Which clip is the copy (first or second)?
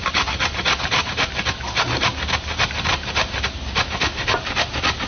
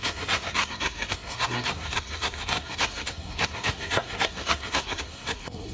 second